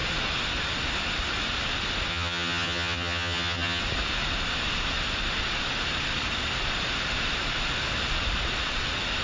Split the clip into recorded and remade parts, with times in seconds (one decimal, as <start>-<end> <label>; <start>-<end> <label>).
0.0-2.1 recorded; 2.1-3.8 remade; 3.8-9.2 recorded